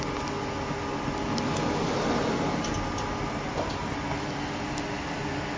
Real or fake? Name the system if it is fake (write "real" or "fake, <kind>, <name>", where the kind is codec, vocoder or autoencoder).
real